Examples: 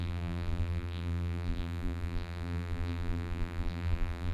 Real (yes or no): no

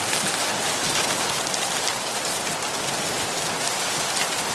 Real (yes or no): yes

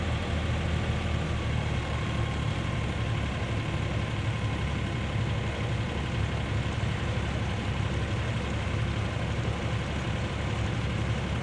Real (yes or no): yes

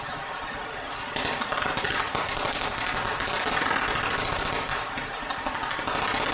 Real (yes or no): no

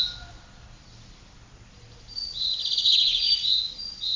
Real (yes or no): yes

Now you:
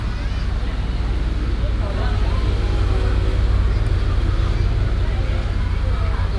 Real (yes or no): yes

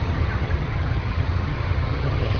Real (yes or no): no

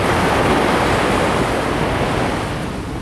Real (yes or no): yes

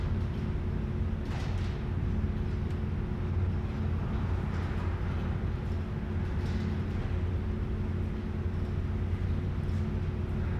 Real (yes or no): yes